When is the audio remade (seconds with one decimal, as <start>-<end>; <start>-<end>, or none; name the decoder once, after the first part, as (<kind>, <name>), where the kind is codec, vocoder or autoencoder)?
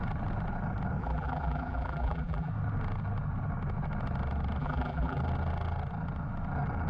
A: 1.0-2.5 (vocoder, BigVGAN v2); 4.6-5.2